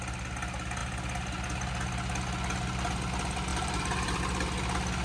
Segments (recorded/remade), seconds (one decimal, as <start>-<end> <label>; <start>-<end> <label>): 0.0-3.5 recorded; 3.5-4.2 remade; 4.2-5.0 recorded